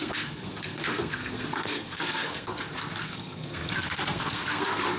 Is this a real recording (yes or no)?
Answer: no